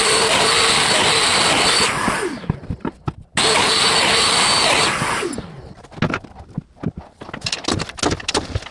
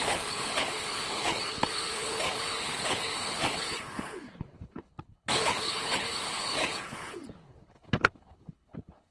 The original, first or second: first